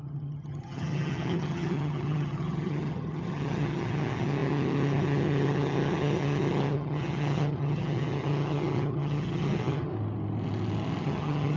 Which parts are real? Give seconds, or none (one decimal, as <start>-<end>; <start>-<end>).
9.9-11.0